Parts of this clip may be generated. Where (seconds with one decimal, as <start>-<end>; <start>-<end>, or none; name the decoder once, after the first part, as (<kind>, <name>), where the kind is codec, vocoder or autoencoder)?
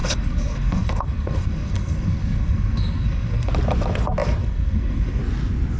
0.0-3.5 (codec, SNAC); 4.4-5.2